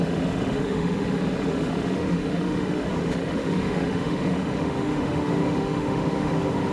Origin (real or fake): fake